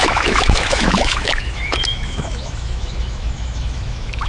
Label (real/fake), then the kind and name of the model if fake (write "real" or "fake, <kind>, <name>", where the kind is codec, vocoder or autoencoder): fake, autoencoder, DAC-VAE